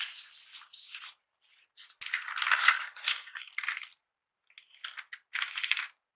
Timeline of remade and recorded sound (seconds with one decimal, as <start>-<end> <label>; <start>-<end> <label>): 0.0-2.6 recorded; 2.6-3.5 remade; 3.5-6.2 recorded